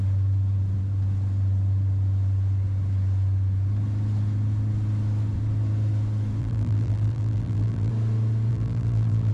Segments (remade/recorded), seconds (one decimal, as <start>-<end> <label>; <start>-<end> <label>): 0.0-6.4 recorded; 6.4-7.9 remade; 7.9-8.5 recorded; 8.5-9.3 remade